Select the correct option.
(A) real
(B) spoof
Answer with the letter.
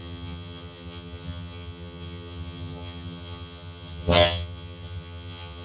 B